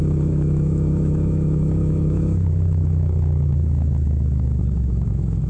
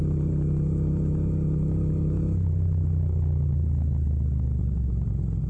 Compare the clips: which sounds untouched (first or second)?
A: second